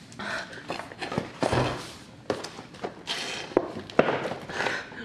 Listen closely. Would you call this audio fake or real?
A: real